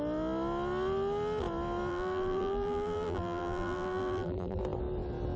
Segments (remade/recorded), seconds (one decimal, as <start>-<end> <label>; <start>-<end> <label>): 0.0-1.9 recorded; 1.9-4.6 remade; 4.6-5.4 recorded